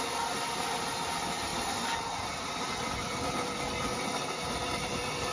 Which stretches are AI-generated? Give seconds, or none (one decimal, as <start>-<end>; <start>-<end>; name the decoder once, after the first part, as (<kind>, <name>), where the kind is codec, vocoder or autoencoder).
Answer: none